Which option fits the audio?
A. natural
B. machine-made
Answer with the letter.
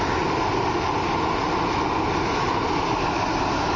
A